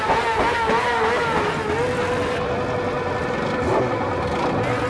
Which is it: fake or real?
real